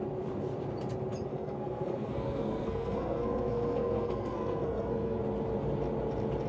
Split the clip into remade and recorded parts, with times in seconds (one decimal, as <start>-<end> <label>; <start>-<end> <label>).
0.0-1.3 recorded; 1.3-5.2 remade; 5.2-6.5 recorded